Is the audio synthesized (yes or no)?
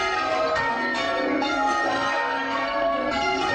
yes